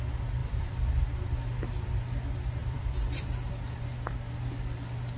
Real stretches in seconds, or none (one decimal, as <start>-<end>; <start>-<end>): 0.0-0.4; 1.0-2.6; 3.5-5.2